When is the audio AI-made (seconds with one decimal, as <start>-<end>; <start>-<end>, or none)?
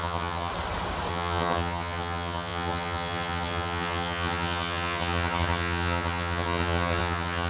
0.0-0.5; 1.1-7.5